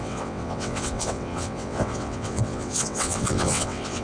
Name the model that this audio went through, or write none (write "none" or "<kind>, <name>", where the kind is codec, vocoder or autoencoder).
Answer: vocoder, WaveNeXt